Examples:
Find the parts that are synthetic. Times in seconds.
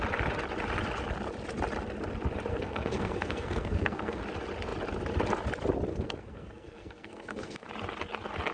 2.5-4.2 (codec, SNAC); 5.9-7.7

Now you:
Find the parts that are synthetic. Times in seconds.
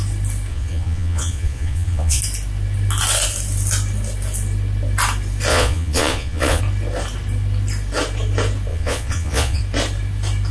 0.5-2.2 (vocoder, Vocos); 5.5-6.6; 8.7-9.6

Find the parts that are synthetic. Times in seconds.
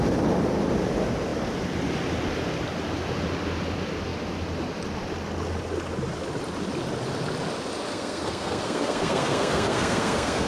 7.9-10.5 (codec, SNAC)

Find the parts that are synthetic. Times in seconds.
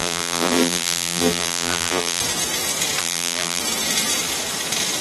0.0-2.2 (vocoder, BigVGAN v2); 3.0-3.6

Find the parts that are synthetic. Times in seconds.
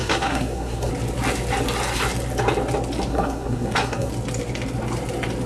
0.0-0.9 (codec, SNAC); 3.1-4.1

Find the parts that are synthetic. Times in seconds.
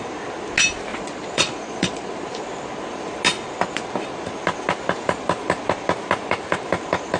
0.9-2.2 (vocoder, Vocos)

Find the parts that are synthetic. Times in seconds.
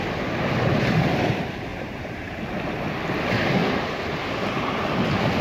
1.7-2.7 (vocoder, BigVGAN v2); 3.6-4.3